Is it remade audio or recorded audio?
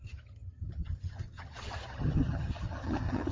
remade